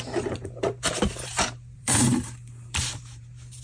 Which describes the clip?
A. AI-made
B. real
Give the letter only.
A